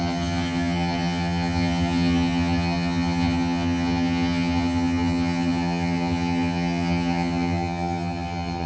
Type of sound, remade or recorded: remade